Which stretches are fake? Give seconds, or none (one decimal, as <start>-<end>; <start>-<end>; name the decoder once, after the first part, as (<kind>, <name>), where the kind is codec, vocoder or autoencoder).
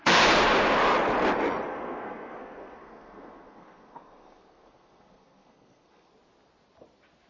1.7-6.1 (codec, SNAC)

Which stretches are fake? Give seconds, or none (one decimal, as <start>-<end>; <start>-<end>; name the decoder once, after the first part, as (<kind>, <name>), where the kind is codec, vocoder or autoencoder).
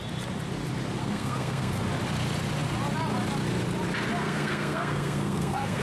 1.0-1.8 (codec, SNAC); 4.2-5.8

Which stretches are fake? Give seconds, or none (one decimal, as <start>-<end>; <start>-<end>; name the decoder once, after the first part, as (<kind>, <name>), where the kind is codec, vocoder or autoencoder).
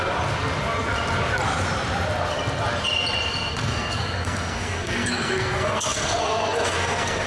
3.6-7.3 (codec, SNAC)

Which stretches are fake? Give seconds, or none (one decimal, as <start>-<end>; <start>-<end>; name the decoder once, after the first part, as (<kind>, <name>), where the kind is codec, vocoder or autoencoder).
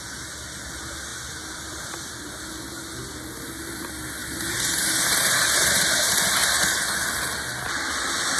1.1-2.4 (vocoder, BigVGAN v2); 4.2-6.1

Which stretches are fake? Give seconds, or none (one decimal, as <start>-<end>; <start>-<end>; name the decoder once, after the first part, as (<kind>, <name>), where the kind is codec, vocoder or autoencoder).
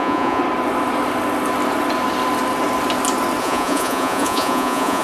0.0-0.4 (vocoder, Vocos); 3.4-5.0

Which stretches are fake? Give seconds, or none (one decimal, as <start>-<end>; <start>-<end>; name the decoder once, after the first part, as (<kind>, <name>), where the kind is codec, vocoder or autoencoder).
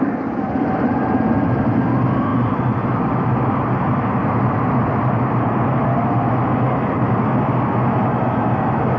none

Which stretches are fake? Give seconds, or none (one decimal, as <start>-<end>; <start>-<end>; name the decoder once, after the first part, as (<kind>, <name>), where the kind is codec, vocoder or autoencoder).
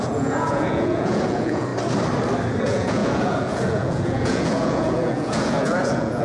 0.0-1.7 (vocoder, Vocos); 2.6-6.2